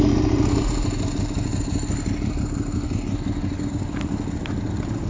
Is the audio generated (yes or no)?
no